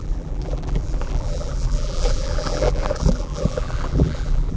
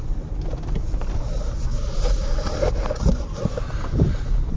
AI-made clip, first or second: first